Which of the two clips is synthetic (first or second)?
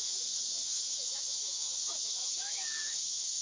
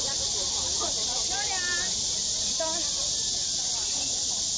first